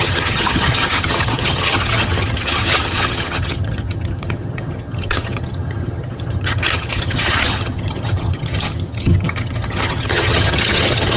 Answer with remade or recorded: remade